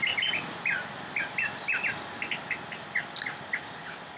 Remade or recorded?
recorded